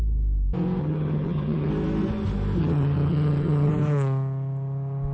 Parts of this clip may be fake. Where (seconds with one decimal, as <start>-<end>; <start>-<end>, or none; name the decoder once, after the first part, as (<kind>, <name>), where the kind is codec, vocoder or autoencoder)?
0.8-1.7 (vocoder, HiFi-GAN); 2.6-3.7